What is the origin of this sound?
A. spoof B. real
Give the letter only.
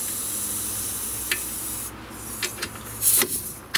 B